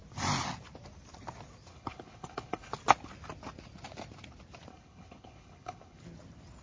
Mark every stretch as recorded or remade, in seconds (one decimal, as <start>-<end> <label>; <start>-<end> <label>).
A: 0.0-1.7 recorded; 1.7-2.7 remade; 2.7-4.7 recorded; 4.7-6.0 remade; 6.0-6.6 recorded